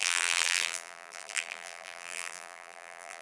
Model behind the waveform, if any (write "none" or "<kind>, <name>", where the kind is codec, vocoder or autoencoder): vocoder, BigVGAN v2